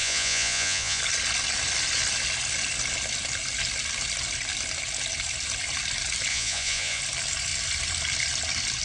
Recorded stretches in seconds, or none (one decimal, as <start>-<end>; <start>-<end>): 1.0-6.3; 7.0-8.8